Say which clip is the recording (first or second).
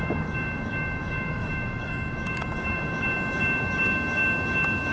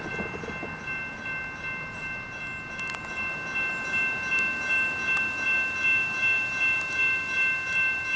second